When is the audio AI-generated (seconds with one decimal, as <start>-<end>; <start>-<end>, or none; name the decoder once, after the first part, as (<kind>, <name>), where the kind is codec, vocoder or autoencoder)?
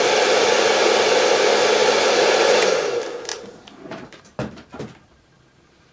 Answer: 3.3-4.5 (vocoder, BigVGAN v2)